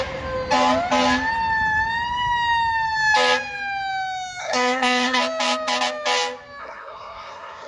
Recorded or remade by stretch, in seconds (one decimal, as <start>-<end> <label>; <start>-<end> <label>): 0.0-4.4 recorded; 4.4-5.2 remade; 5.2-6.6 recorded; 6.6-7.7 remade